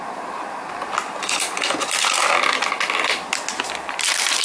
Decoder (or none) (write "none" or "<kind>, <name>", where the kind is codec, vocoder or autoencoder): none